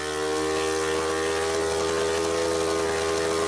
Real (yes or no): yes